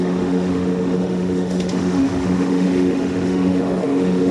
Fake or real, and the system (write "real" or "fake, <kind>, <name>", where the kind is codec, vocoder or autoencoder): fake, autoencoder, DAC-VAE